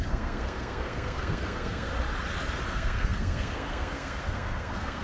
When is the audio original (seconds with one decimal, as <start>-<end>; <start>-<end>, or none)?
1.9-2.7